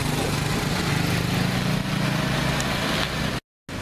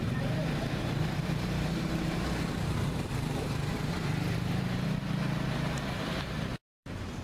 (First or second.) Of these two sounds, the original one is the first